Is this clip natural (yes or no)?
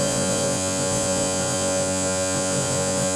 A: no